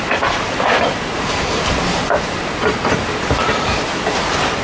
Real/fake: fake